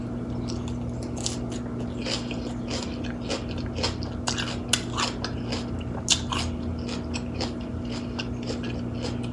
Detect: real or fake real